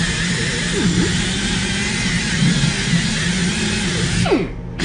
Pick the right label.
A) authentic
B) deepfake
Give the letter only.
A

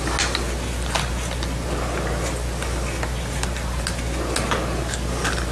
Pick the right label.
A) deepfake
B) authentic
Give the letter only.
B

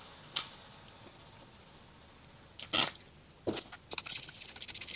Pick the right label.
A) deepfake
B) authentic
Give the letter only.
B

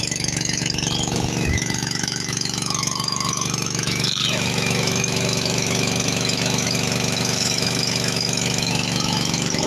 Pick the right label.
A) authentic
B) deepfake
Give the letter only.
B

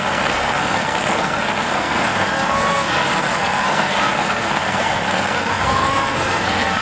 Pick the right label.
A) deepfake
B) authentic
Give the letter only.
A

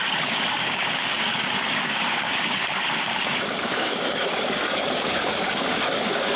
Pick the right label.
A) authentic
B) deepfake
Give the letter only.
B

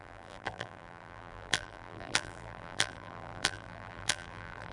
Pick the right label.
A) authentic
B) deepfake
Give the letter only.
B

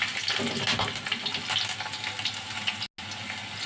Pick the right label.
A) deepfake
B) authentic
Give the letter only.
B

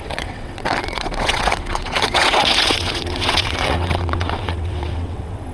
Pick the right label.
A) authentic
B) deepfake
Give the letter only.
B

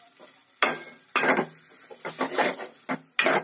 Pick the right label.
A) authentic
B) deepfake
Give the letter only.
A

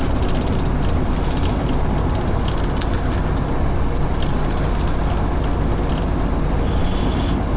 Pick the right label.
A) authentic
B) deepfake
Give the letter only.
A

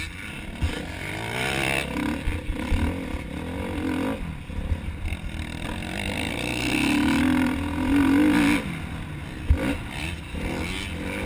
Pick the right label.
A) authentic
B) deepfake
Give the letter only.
A